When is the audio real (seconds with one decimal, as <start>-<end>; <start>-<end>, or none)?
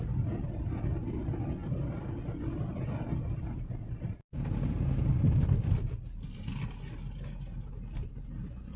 0.0-8.8